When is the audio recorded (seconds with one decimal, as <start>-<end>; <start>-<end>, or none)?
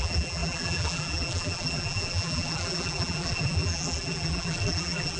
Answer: none